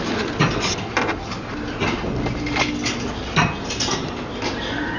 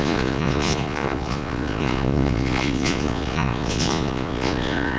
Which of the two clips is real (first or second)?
first